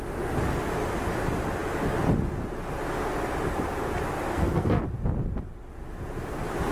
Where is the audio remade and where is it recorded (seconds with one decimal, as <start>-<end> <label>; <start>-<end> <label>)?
0.0-4.3 recorded; 4.3-4.8 remade; 4.8-6.7 recorded